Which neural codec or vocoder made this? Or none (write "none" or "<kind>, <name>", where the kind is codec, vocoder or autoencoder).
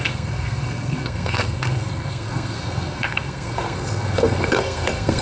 codec, SNAC